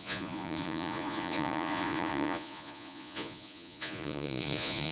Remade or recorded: remade